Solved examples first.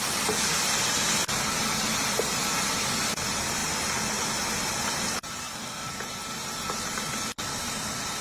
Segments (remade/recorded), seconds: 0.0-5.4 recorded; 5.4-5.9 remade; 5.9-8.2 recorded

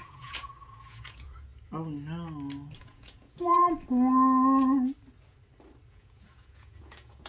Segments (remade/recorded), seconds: 0.0-1.5 remade; 1.5-2.8 recorded; 2.8-3.6 remade; 3.6-5.9 recorded; 5.9-7.3 remade

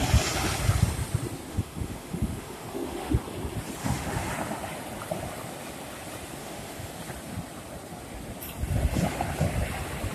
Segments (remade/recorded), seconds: 0.0-1.5 recorded; 1.5-3.1 remade; 3.1-3.8 recorded; 3.8-4.3 remade; 4.3-6.4 recorded; 6.4-6.9 remade; 6.9-10.1 recorded